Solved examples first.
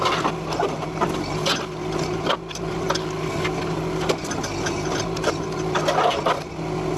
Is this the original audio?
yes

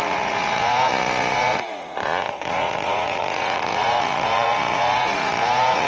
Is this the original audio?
no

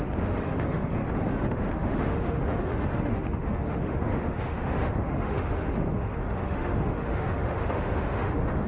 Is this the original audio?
no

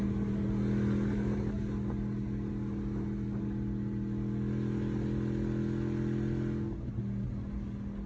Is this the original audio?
yes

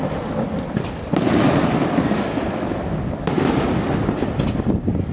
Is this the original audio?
yes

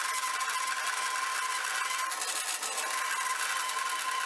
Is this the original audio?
yes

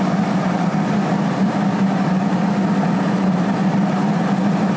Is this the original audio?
yes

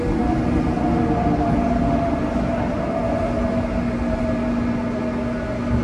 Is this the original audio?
yes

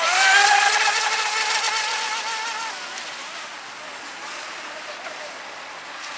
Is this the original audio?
yes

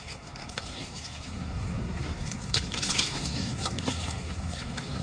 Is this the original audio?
no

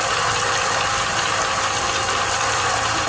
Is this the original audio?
yes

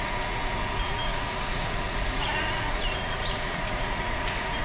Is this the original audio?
no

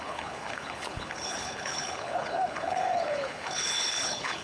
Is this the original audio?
no